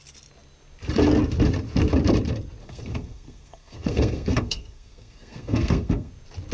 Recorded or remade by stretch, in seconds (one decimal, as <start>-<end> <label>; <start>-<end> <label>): 0.0-2.6 recorded; 2.6-6.1 remade; 6.1-6.5 recorded